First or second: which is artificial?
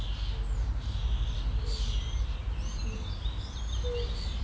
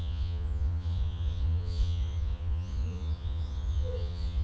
second